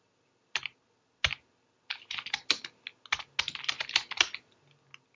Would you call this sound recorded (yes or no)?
yes